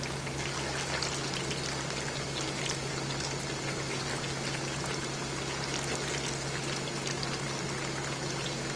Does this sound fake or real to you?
real